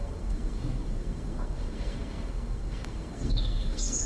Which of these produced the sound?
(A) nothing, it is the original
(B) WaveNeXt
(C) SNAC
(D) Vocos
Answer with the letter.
C